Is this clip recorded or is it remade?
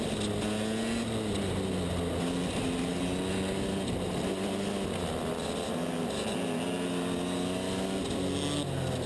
recorded